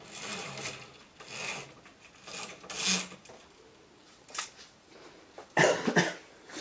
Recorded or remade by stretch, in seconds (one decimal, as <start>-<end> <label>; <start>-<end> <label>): 0.0-6.6 recorded